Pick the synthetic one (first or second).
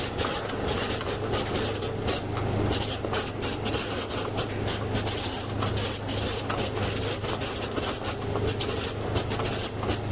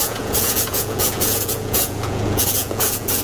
second